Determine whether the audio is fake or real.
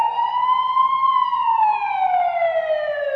real